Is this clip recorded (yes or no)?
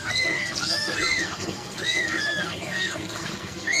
no